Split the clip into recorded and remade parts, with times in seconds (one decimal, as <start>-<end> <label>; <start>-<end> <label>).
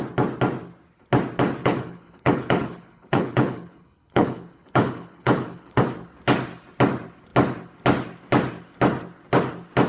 0.0-1.6 recorded; 1.6-5.8 remade; 5.8-9.9 recorded